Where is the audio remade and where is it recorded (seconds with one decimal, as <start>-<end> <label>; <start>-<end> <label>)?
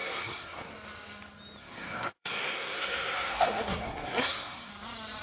0.0-0.7 remade; 0.7-1.6 recorded; 1.6-4.7 remade; 4.7-5.2 recorded